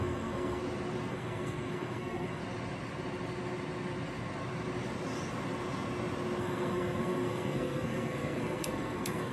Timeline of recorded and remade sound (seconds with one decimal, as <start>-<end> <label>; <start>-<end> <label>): 0.0-0.6 remade; 0.6-1.1 recorded; 1.1-2.4 remade; 2.4-6.4 recorded; 6.4-9.3 remade